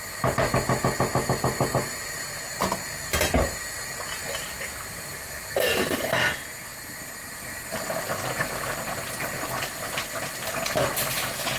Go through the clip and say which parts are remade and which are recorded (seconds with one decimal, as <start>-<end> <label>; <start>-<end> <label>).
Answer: 0.0-11.6 recorded

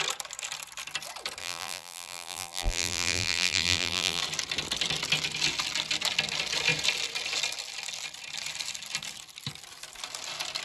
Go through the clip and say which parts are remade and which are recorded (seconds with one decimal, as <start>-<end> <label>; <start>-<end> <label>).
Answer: 0.0-1.4 recorded; 1.4-4.2 remade; 4.2-10.6 recorded

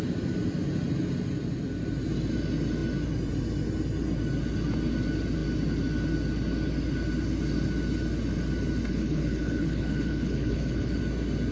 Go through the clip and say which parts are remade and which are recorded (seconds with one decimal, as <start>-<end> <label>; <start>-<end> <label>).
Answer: 0.0-8.9 recorded; 8.9-11.0 remade; 11.0-11.5 recorded

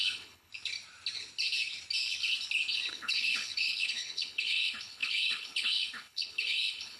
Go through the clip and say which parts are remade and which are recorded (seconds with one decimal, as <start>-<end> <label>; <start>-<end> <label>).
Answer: 0.0-0.5 remade; 0.5-2.9 recorded; 2.9-7.0 remade

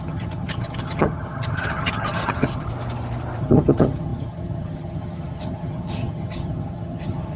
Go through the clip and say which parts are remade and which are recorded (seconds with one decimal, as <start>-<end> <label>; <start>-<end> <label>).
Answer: 0.0-2.7 remade; 2.7-3.4 recorded; 3.4-7.4 remade

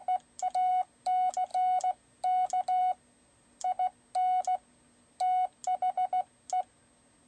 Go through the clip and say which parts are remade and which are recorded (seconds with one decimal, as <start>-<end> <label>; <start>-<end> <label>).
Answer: 0.0-7.3 recorded

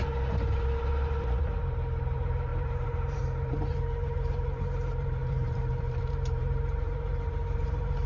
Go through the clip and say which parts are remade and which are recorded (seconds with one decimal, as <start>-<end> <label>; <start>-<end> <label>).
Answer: 0.0-8.1 remade